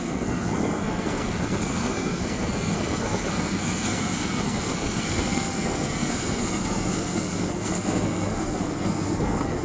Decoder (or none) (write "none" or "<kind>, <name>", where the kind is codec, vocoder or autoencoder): codec, SNAC